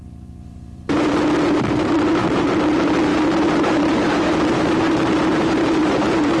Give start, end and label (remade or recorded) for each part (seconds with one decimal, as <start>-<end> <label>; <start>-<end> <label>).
0.0-6.4 remade